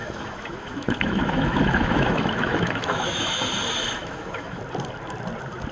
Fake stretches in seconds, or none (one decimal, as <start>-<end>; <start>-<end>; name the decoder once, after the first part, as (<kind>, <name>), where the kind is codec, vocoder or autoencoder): 0.0-3.4 (autoencoder, DAC-VAE); 4.0-4.6